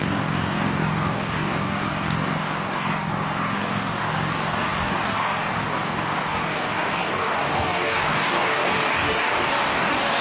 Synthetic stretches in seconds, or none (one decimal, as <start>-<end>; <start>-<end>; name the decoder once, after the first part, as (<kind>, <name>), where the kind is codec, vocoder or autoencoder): 0.0-10.2 (codec, DAC)